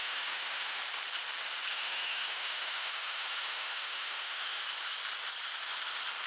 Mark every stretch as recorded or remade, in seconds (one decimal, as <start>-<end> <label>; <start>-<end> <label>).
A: 0.0-0.8 remade; 0.8-1.7 recorded; 1.7-4.6 remade; 4.6-6.3 recorded